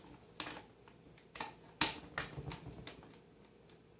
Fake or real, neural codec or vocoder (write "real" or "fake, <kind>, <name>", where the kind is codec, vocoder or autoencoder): real